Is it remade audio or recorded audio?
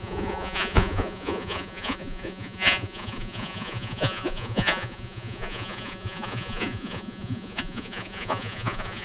remade